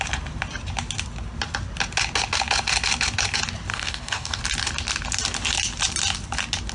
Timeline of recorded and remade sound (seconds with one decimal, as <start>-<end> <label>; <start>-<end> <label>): 0.0-3.7 recorded; 3.7-4.4 remade; 4.4-6.7 recorded